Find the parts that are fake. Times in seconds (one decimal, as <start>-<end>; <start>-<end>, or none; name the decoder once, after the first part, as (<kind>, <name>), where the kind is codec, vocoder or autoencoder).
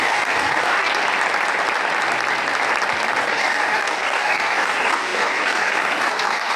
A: 0.0-0.9 (codec, DAC); 3.2-6.6